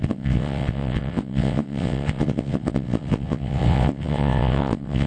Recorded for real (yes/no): no